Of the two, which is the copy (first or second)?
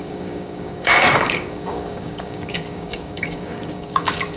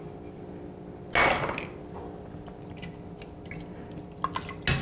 first